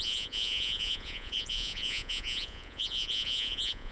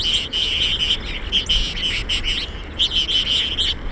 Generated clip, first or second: first